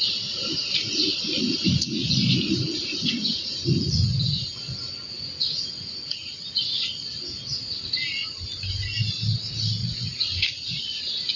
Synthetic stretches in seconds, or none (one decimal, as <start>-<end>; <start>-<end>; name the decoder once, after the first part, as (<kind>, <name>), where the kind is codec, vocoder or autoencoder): 2.8-7.0 (vocoder, Vocos); 9.8-11.0